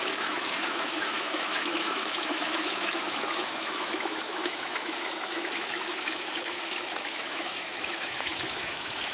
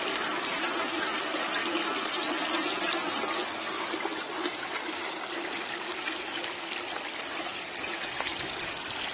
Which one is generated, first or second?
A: first